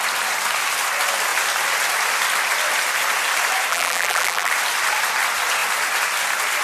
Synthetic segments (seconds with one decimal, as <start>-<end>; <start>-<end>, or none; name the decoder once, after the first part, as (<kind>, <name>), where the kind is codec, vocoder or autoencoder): 3.7-4.5 (vocoder, BigVGAN v2)